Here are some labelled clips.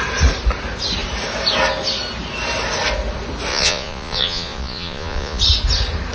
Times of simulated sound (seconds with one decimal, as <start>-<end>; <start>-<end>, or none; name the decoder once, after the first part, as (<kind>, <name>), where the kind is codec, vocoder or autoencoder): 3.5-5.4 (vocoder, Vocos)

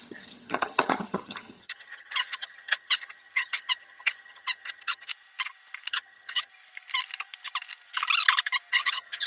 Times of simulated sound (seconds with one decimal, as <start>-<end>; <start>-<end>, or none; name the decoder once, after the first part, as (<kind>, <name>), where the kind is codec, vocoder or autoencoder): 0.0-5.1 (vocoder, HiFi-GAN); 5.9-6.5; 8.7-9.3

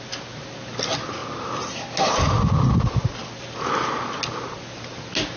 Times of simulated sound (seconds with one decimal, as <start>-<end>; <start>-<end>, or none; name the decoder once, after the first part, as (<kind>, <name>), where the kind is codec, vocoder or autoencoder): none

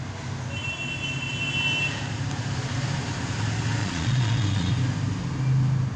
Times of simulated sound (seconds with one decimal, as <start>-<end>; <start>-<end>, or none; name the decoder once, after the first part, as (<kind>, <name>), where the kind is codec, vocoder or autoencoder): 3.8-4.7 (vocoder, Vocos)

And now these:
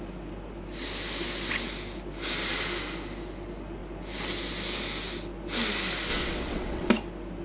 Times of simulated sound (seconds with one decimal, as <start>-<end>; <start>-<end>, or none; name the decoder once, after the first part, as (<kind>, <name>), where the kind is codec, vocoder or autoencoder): 6.1-6.9 (vocoder, WaveNeXt)

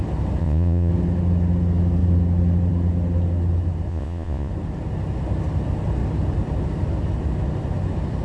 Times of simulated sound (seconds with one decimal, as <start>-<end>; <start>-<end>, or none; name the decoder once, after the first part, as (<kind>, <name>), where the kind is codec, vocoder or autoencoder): 0.4-0.9 (vocoder, Vocos); 3.9-4.5